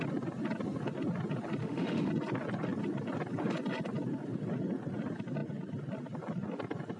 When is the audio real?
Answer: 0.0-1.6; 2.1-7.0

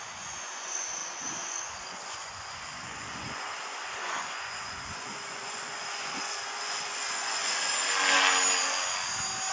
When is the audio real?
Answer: 7.7-9.5

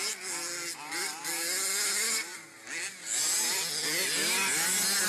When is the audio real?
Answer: 0.0-5.1

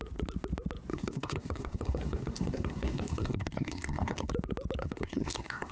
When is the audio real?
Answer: 0.0-0.9; 4.3-4.8